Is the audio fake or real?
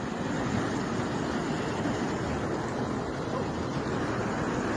real